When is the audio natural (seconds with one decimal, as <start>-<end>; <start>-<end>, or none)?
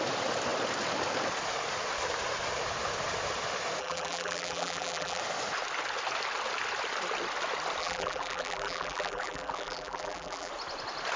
0.0-3.8; 5.2-7.8; 10.5-11.2